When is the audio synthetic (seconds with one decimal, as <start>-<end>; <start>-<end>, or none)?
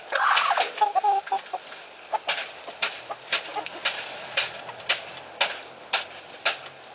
3.5-5.4